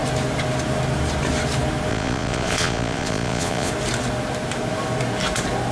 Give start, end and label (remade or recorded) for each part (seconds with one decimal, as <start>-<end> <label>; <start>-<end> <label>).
0.0-1.9 recorded; 1.9-3.7 remade; 3.7-5.7 recorded